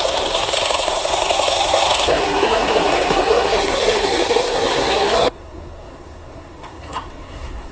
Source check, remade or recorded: remade